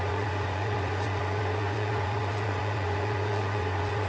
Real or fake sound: fake